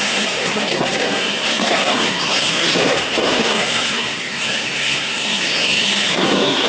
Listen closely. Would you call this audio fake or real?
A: fake